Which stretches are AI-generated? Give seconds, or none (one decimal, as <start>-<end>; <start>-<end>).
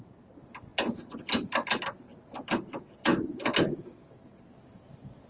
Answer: none